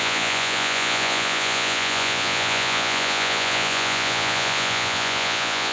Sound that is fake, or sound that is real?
fake